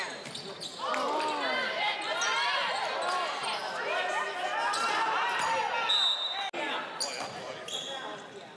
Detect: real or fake real